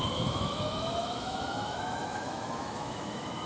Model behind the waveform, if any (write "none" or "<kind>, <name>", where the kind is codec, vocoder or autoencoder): autoencoder, DAC-VAE